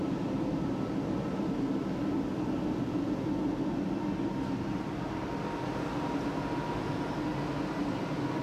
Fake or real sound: real